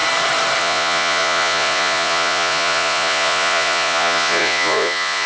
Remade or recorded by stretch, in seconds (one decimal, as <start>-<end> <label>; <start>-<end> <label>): 0.0-0.6 recorded; 0.6-5.3 remade